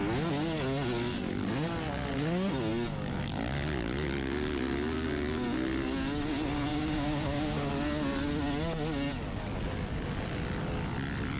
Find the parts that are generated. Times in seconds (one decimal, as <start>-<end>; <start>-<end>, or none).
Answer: 6.7-7.7